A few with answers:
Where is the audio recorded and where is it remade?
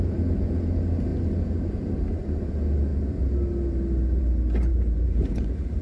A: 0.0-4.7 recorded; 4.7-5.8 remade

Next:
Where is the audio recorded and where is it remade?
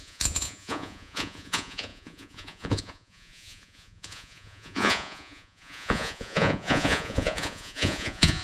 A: 0.0-8.4 remade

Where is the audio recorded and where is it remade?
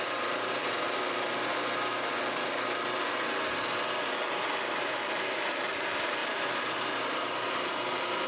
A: 0.0-1.3 remade; 1.3-4.5 recorded; 4.5-8.3 remade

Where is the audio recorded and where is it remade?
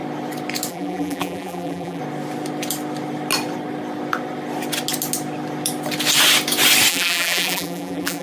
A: 0.0-0.7 recorded; 0.7-2.0 remade; 2.0-6.9 recorded; 6.9-8.2 remade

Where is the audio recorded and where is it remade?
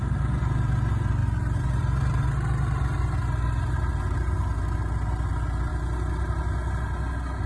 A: 0.0-7.5 recorded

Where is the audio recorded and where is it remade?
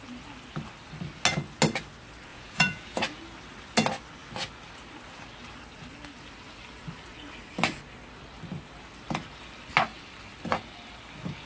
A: 0.0-2.3 recorded; 2.3-3.0 remade; 3.0-11.5 recorded